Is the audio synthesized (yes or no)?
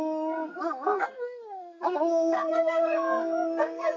yes